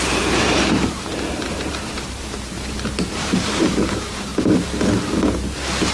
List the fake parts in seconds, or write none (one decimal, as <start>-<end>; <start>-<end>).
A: 0.0-4.3